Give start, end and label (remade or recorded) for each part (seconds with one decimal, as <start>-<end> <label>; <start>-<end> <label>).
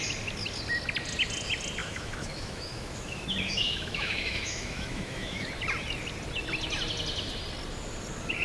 0.0-1.8 recorded; 1.8-5.5 remade; 5.5-8.4 recorded